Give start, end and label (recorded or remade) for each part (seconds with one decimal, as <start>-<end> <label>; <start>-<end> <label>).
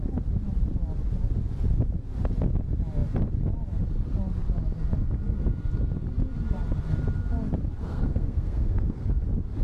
0.0-7.8 recorded; 7.8-9.1 remade; 9.1-9.6 recorded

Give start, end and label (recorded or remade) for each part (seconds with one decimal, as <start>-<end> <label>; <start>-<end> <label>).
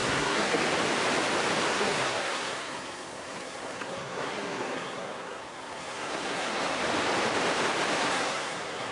0.0-0.6 remade; 0.6-1.7 recorded; 1.7-6.8 remade; 6.8-8.0 recorded; 8.0-8.9 remade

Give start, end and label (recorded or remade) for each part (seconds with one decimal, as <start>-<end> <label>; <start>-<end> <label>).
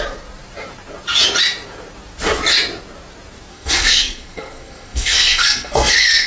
0.0-3.5 recorded; 3.5-6.3 remade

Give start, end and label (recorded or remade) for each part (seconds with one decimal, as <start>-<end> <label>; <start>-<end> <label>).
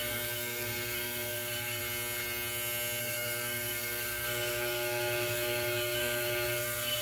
0.0-1.8 remade; 1.8-3.0 recorded; 3.0-7.0 remade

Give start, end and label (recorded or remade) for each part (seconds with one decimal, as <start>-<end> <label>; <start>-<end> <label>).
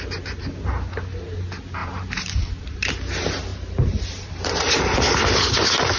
0.0-1.8 recorded; 1.8-2.9 remade; 2.9-3.5 recorded; 3.5-4.7 remade; 4.7-6.0 recorded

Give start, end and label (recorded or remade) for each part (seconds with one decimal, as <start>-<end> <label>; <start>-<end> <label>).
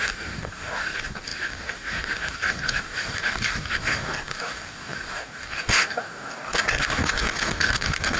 0.0-8.2 remade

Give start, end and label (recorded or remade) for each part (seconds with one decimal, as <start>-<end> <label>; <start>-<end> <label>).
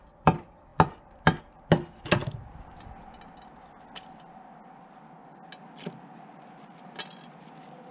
0.0-7.9 recorded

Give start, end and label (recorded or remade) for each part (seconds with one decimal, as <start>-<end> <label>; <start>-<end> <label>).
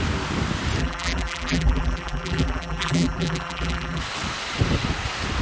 0.0-0.8 recorded; 0.8-4.0 remade; 4.0-5.4 recorded